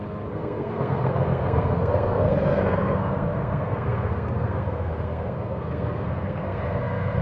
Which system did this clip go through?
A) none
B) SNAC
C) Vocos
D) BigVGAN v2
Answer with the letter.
B